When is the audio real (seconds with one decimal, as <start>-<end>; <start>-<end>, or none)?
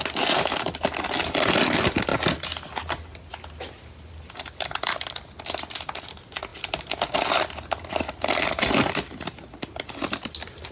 0.0-10.7